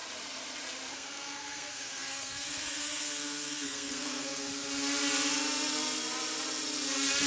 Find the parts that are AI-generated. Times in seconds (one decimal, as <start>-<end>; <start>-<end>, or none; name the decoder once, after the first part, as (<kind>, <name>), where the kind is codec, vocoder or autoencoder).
0.9-4.5 (codec, SNAC)